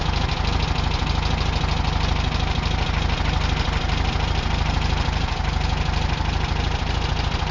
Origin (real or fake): real